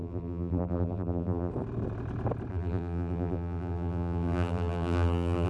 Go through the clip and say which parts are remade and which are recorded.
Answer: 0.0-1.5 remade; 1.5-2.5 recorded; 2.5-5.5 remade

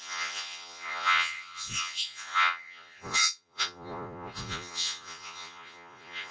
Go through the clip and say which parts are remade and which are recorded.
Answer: 0.0-6.3 remade

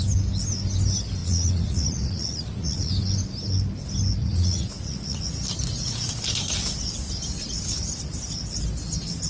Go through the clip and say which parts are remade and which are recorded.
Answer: 0.0-1.2 recorded; 1.2-2.9 remade; 2.9-4.2 recorded; 4.2-5.2 remade; 5.2-9.3 recorded

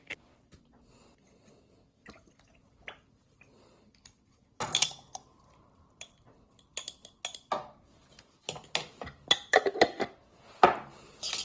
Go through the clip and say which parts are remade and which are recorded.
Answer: 0.0-11.4 recorded

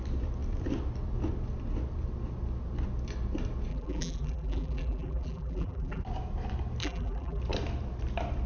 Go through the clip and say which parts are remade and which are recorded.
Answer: 0.0-3.7 recorded; 3.7-6.0 remade; 6.0-6.8 recorded; 6.8-7.4 remade; 7.4-8.5 recorded